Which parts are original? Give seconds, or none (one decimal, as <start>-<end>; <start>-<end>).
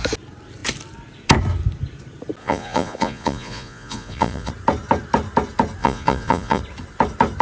0.0-2.4; 4.5-5.8; 6.6-7.4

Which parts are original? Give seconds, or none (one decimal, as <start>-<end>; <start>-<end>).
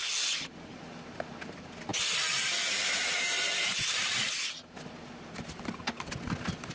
0.0-6.7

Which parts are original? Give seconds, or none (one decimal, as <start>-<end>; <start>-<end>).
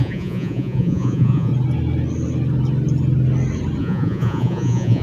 1.5-3.8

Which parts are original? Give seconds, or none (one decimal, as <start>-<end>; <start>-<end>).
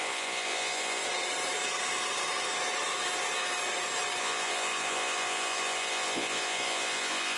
1.0-4.2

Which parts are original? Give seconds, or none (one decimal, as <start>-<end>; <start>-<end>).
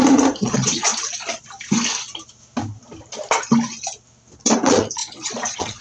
0.9-4.4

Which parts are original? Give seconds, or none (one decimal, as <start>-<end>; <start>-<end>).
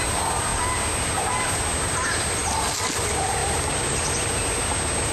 0.0-5.1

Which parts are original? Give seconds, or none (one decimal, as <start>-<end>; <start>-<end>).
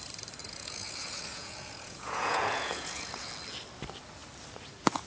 0.0-0.4; 3.3-5.1